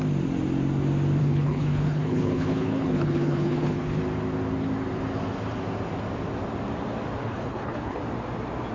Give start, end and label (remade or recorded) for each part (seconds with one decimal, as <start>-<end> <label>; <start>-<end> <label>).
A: 0.0-1.2 recorded; 1.2-4.0 remade; 4.0-7.2 recorded; 7.2-8.0 remade; 8.0-8.7 recorded